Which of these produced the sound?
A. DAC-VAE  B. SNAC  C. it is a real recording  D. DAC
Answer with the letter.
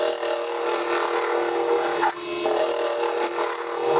C